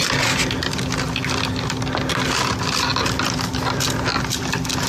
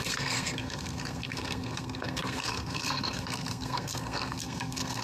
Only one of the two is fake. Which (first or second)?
second